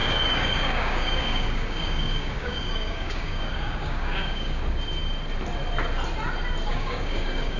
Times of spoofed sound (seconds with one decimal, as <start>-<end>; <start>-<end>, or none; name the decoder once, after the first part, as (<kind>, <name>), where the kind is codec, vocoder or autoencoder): 0.0-4.6 (codec, DAC); 6.7-7.6